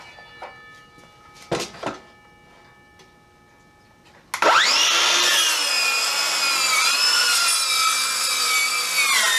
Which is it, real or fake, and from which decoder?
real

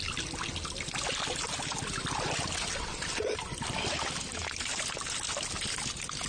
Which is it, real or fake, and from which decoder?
real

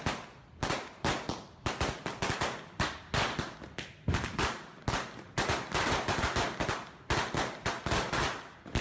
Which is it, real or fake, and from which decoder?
real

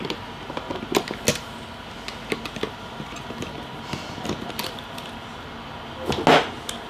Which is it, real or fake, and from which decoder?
real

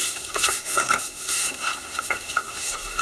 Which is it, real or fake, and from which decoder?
fake, codec, SNAC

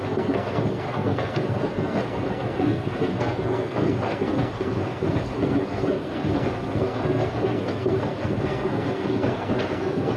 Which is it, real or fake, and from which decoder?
fake, codec, SNAC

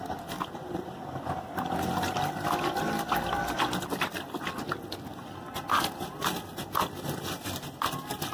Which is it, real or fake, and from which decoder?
real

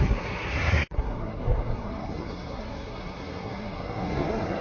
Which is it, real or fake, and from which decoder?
fake, codec, SNAC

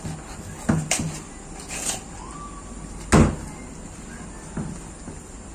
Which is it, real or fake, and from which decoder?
real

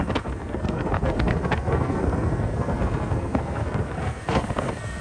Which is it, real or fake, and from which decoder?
fake, codec, SNAC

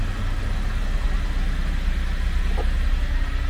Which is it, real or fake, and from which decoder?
real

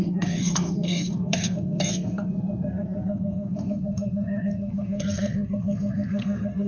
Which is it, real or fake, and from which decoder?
fake, codec, SNAC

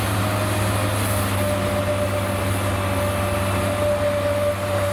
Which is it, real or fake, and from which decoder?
real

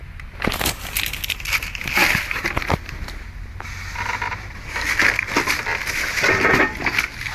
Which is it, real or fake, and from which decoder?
real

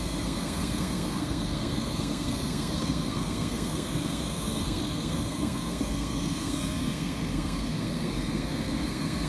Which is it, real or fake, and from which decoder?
fake, codec, SNAC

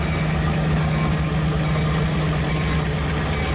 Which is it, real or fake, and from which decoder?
real